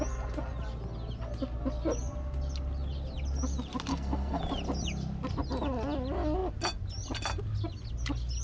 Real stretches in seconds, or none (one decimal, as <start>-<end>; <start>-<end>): 0.0-3.9; 4.4-8.4